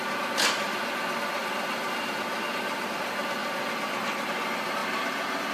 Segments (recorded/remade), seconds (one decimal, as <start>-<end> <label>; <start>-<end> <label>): 0.0-1.4 recorded; 1.4-2.2 remade; 2.2-5.5 recorded